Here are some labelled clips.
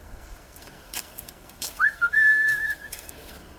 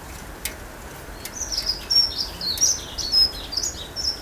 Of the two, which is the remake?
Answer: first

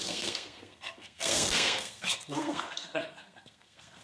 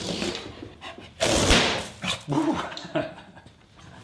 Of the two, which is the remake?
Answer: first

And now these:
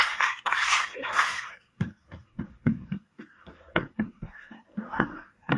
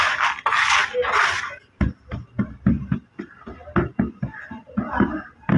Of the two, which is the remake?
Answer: first